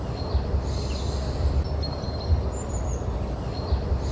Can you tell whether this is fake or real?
real